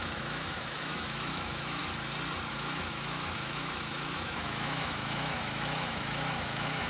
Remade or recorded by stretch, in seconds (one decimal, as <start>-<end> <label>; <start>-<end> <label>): 0.0-1.8 remade; 1.8-2.5 recorded; 2.5-6.9 remade